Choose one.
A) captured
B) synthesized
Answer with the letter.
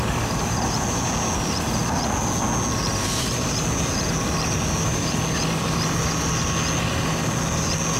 A